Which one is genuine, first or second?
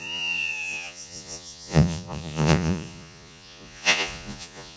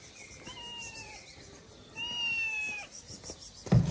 second